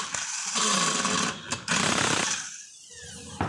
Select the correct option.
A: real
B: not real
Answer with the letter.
A